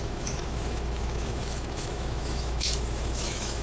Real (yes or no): no